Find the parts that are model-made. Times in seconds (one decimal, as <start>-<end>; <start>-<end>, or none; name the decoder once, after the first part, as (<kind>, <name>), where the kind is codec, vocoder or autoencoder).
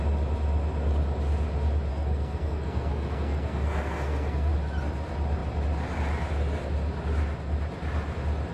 1.9-4.5 (codec, SNAC)